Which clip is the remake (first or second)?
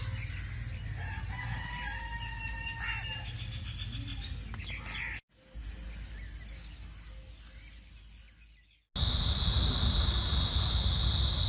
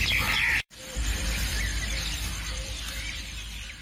second